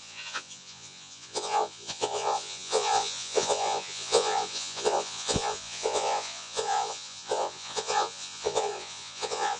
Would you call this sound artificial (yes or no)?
yes